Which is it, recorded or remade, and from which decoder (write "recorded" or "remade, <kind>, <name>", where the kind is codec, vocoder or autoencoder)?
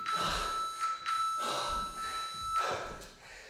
recorded